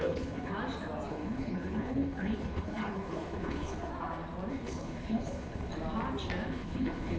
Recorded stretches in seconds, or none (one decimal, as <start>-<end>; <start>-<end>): 0.5-1.1; 3.9-4.5; 5.7-6.5